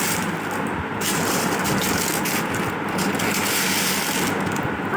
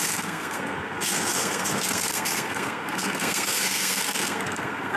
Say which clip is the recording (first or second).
first